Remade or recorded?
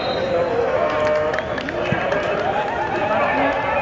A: recorded